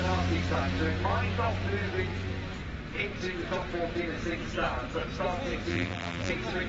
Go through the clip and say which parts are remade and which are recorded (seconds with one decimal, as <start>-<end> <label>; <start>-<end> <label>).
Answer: 0.0-5.7 recorded; 5.7-6.3 remade; 6.3-6.7 recorded